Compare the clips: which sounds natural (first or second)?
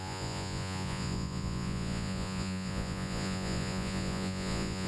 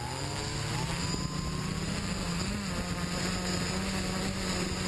second